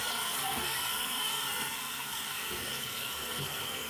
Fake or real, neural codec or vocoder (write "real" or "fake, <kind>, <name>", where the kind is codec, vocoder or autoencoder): fake, codec, SNAC